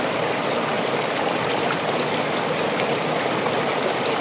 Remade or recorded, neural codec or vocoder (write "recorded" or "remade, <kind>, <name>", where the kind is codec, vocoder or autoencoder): recorded